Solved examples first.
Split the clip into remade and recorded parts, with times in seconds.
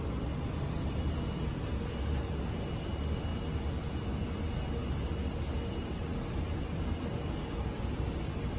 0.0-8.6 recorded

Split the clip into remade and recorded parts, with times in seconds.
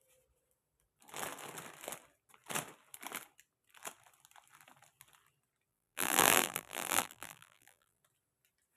0.0-5.7 recorded; 5.7-8.0 remade; 8.0-8.8 recorded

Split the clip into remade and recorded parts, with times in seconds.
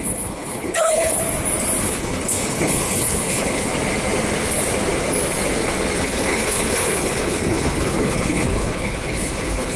0.0-1.2 remade; 1.2-1.8 recorded; 1.8-3.7 remade; 3.7-6.0 recorded; 6.0-9.8 remade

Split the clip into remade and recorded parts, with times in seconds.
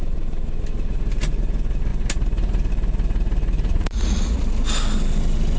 0.0-3.7 recorded; 3.7-4.4 remade; 4.4-5.6 recorded